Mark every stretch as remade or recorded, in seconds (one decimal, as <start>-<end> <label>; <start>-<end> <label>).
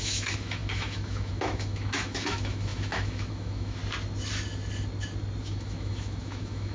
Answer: 0.0-3.8 remade; 3.8-5.4 recorded; 5.4-6.7 remade